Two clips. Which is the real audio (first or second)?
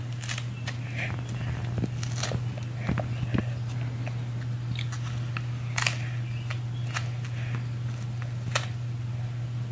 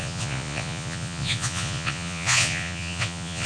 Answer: first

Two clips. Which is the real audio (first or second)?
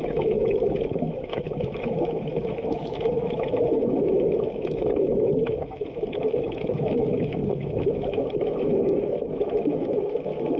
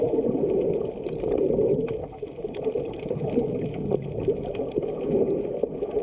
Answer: second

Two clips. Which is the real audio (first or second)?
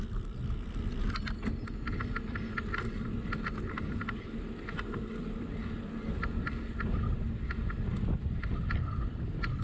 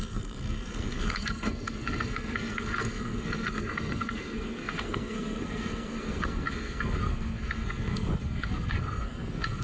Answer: first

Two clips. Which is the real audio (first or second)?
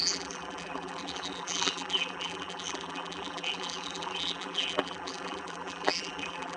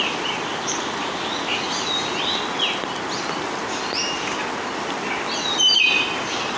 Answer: second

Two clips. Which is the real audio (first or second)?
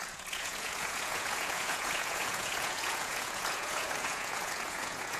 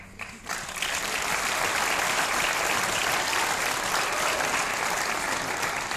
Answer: second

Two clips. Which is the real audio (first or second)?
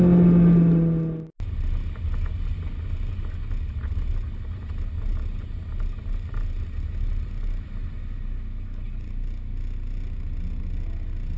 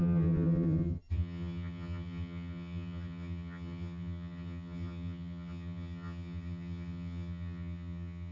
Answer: first